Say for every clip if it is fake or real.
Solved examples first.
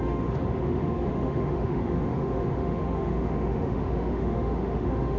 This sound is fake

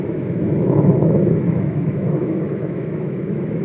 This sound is fake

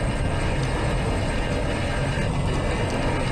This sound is real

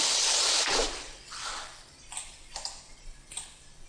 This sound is real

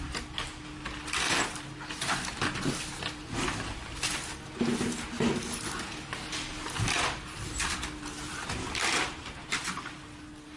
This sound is real